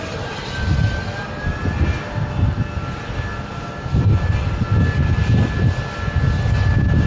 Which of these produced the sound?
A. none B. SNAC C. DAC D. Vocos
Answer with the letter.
A